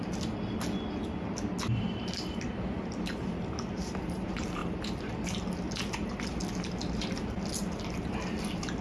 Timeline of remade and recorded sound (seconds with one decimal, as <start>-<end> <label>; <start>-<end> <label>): 0.0-8.8 recorded